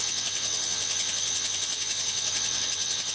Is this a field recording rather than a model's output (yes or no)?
no